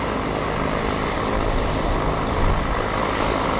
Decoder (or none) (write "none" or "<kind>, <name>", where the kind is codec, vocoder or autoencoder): none